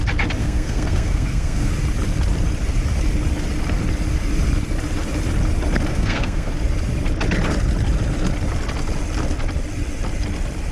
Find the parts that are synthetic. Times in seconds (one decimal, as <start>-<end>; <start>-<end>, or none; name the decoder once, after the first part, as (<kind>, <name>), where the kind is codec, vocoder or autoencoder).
0.4-1.7 (codec, SNAC); 5.9-6.5